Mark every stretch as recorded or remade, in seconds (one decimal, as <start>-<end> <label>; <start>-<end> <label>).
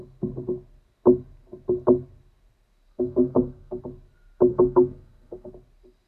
0.0-2.9 recorded; 2.9-3.8 remade; 3.8-4.5 recorded; 4.5-5.5 remade; 5.5-6.1 recorded